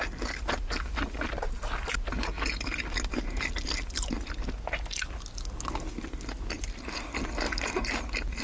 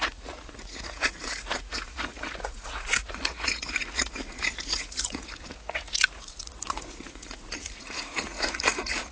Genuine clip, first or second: first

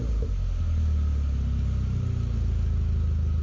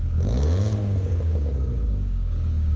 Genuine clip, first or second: first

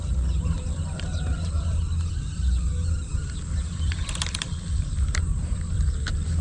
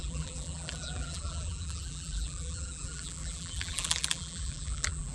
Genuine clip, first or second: first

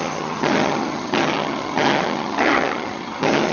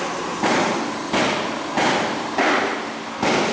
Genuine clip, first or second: second